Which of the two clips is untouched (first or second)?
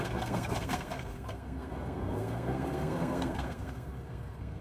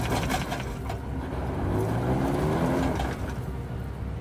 second